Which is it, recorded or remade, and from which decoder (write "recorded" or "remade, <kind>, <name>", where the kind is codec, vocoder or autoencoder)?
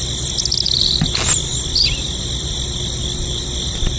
remade, vocoder, BigVGAN v2